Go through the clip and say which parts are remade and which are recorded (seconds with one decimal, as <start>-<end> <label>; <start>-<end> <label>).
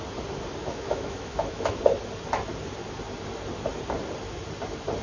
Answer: 0.0-0.6 recorded; 0.6-1.8 remade; 1.8-5.0 recorded